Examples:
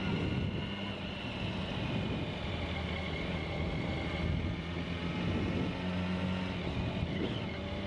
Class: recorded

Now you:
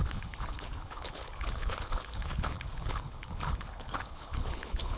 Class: remade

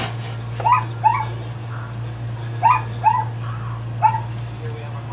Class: recorded